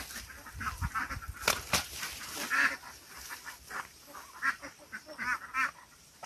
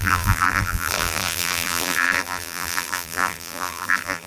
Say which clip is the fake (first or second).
second